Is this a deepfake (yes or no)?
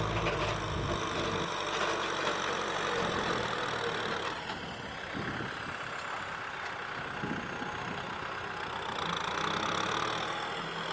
no